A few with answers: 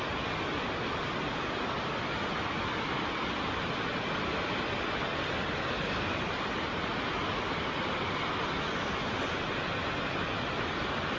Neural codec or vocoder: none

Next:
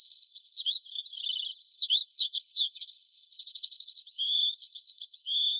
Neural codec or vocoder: codec, HILCodec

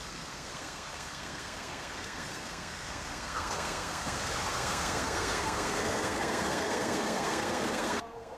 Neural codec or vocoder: codec, SNAC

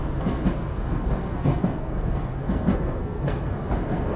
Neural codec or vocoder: codec, SNAC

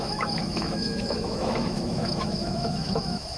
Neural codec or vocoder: autoencoder, DAC-VAE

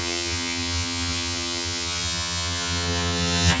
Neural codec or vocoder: vocoder, HiFi-GAN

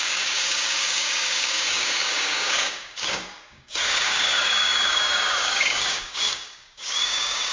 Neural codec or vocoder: codec, DAC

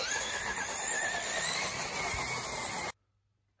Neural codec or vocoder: none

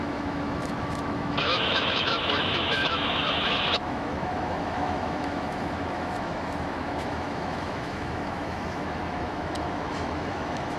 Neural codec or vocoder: autoencoder, DAC-VAE